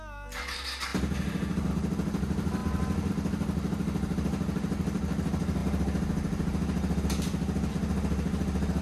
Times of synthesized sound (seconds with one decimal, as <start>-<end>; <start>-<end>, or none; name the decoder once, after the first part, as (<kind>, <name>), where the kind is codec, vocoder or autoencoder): none